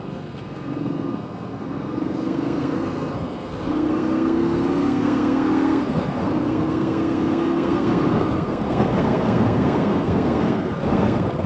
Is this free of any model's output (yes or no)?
no